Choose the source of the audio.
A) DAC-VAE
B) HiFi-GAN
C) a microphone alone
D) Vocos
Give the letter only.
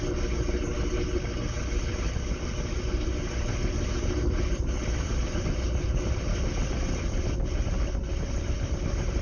C